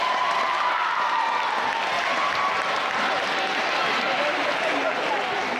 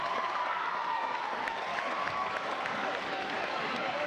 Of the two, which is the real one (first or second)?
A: first